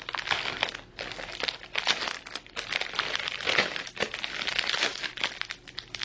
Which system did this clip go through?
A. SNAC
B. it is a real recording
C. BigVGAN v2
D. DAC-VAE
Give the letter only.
B